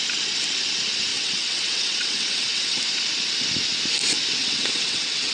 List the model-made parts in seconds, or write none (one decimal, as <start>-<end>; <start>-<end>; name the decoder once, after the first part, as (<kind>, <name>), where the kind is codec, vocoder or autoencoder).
1.1-2.8 (vocoder, WaveNeXt); 4.4-5.3